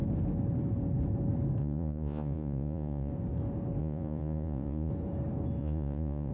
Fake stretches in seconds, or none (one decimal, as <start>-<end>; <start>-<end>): 1.6-3.1; 3.8-4.9; 5.6-6.3